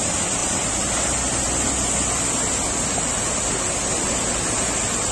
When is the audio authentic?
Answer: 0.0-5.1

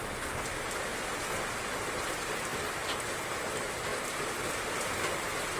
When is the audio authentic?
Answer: 0.0-5.6

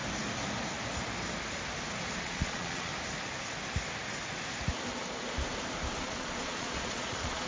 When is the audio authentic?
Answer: 0.0-2.2; 2.9-6.0

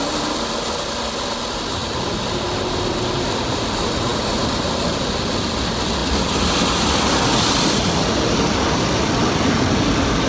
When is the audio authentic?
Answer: 0.0-10.3

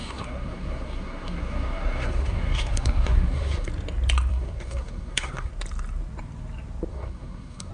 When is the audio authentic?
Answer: 3.7-4.3; 5.5-6.9

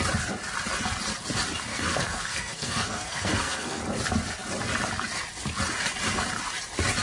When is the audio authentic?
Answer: 0.0-1.7; 3.8-7.0